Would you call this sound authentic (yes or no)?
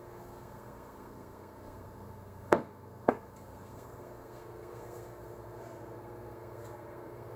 no